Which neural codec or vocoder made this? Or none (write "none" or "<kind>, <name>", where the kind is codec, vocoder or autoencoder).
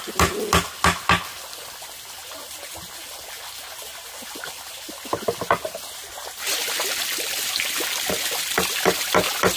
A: none